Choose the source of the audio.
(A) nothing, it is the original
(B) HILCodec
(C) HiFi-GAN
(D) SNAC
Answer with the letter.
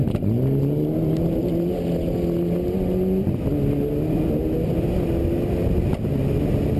A